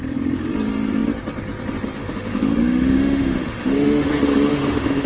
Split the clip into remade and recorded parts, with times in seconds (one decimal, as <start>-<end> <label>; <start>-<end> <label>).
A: 0.0-2.0 recorded; 2.0-4.1 remade; 4.1-4.5 recorded; 4.5-5.1 remade